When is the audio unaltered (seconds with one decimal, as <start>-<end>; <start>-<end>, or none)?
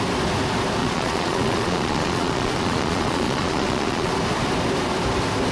0.0-0.8; 4.1-5.5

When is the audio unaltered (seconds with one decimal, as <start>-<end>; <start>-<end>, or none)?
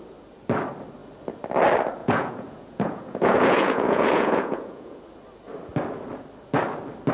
0.0-2.0; 5.0-7.1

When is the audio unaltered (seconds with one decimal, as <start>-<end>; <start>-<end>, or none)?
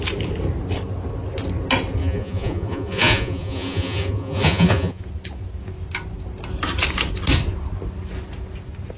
0.0-2.0; 5.0-9.0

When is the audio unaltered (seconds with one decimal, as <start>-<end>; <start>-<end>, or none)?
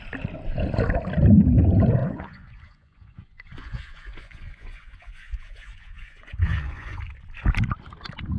0.0-2.0; 7.0-8.4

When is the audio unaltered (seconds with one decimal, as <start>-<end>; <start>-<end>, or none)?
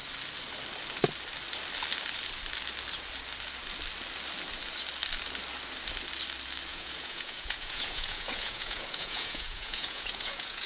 0.0-6.7